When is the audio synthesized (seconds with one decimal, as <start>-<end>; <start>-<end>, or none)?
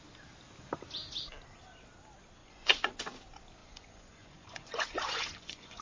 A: 2.4-2.9; 3.6-5.8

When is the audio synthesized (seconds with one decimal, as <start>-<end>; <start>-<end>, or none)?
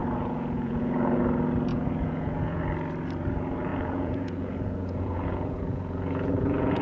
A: 0.0-1.2; 1.7-2.6; 3.7-6.8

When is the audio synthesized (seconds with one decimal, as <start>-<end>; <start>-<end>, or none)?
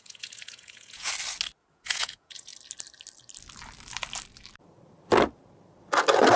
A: 0.0-1.1; 1.7-2.5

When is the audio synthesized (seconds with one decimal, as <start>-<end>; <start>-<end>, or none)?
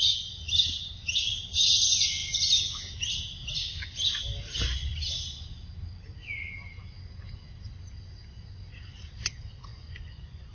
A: 9.7-10.5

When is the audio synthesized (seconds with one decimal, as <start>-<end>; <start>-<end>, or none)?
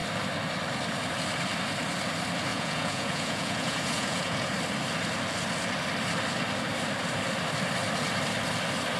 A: 2.5-4.5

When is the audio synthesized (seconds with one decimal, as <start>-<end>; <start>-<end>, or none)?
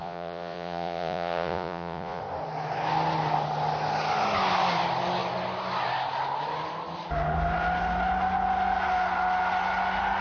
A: 0.0-2.2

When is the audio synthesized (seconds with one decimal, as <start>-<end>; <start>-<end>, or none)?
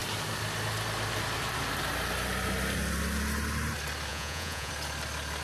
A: 4.1-4.7